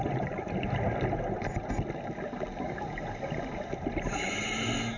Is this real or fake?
real